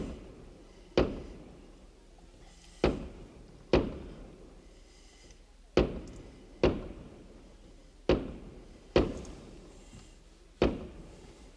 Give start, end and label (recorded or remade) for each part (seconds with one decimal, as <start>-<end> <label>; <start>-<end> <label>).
0.0-11.6 recorded